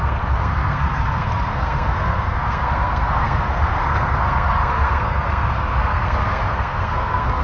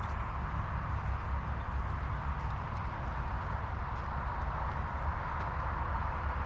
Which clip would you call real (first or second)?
second